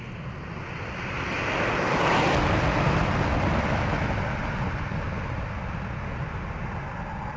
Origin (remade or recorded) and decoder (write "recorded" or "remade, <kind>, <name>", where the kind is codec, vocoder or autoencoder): recorded